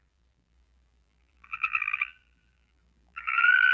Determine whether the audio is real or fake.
fake